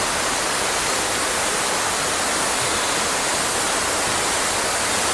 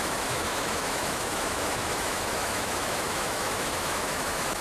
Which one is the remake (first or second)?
second